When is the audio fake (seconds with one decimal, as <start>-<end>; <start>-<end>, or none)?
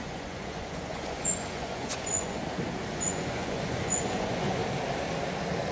0.0-2.4; 2.9-4.6